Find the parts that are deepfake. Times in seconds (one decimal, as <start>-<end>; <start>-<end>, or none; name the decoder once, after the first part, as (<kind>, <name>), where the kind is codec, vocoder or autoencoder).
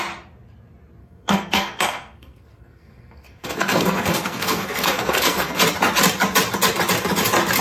1.0-5.6 (codec, SNAC)